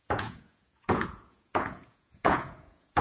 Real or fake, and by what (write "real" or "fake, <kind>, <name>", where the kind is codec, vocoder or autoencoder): fake, vocoder, Vocos